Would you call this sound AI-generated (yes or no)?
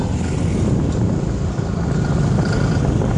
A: no